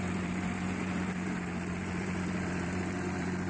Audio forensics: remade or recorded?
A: remade